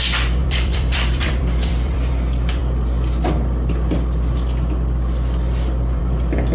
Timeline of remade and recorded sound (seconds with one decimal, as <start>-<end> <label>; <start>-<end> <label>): 0.0-0.4 recorded; 0.4-2.1 remade; 2.1-6.5 recorded